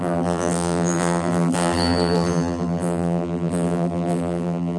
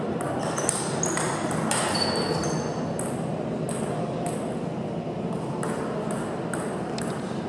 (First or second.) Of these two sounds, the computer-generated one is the first